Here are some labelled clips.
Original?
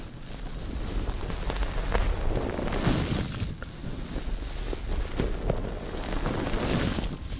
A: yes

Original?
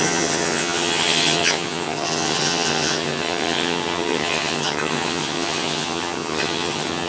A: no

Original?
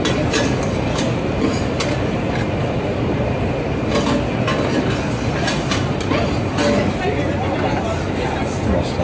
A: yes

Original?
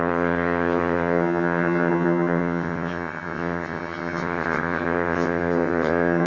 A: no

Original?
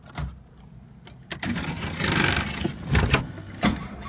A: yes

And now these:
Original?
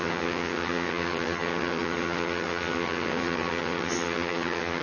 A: no